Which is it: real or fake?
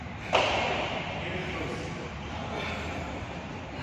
real